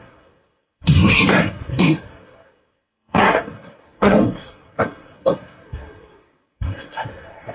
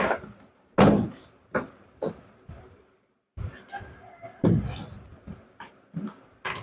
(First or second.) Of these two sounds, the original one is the second